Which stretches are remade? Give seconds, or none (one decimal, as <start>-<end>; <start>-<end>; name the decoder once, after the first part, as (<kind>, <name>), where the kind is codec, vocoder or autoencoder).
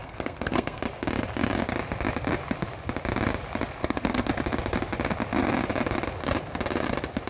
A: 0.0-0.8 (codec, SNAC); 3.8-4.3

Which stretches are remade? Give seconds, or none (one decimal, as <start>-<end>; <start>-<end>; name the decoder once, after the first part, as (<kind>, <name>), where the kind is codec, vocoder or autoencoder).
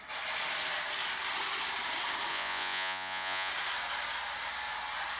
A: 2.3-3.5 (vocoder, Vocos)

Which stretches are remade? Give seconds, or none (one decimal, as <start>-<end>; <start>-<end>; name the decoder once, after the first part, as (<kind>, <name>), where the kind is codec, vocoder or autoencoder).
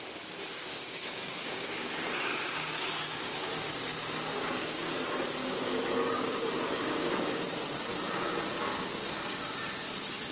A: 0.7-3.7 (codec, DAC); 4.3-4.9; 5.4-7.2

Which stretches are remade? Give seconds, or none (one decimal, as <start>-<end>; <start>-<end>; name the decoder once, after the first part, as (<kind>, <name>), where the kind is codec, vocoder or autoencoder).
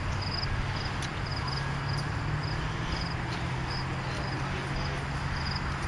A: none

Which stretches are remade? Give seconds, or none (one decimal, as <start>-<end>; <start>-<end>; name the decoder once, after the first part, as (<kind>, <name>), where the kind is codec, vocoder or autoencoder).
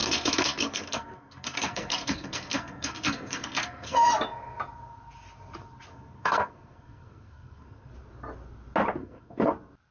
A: 0.0-4.1 (codec, SNAC); 5.9-7.9; 9.0-9.5